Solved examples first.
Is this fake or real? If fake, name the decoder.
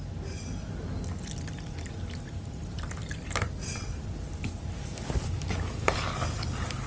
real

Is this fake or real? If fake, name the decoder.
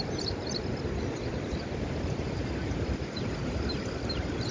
real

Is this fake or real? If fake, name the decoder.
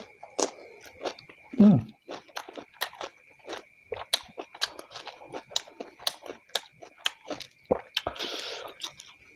real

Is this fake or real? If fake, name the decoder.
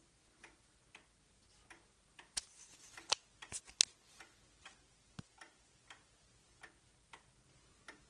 real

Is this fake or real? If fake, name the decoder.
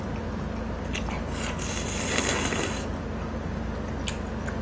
real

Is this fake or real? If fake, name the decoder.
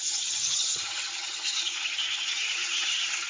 fake, vocoder, HiFi-GAN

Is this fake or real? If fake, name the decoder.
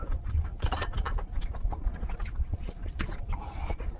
fake, vocoder, Vocos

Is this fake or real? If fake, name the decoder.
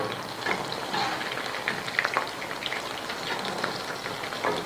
real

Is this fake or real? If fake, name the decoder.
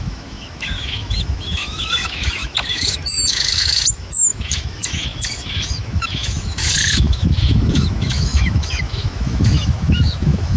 fake, autoencoder, DAC-VAE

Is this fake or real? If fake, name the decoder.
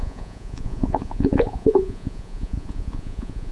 fake, vocoder, Vocos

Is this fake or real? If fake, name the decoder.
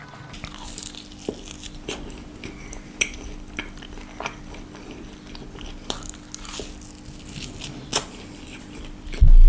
real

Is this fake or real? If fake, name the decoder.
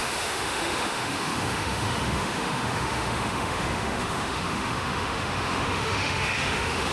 fake, autoencoder, DAC-VAE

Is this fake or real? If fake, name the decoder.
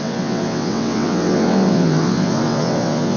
fake, vocoder, WaveNeXt